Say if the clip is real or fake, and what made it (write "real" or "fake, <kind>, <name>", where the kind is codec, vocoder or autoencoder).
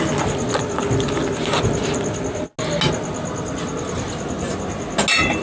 real